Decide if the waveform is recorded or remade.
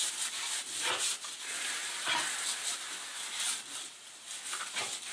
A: recorded